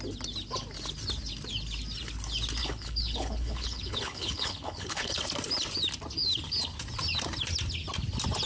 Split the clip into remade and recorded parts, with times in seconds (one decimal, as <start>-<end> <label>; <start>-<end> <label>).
0.0-2.6 recorded; 2.6-5.2 remade; 5.2-8.5 recorded